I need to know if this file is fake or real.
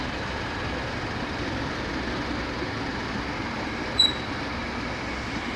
real